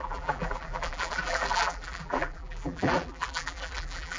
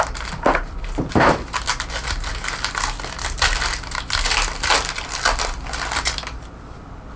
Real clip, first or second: second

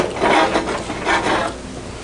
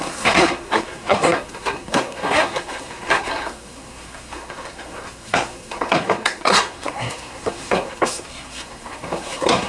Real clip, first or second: first